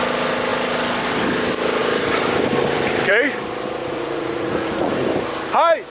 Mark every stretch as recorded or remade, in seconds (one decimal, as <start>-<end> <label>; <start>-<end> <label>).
0.0-3.8 recorded; 3.8-4.9 remade; 4.9-5.9 recorded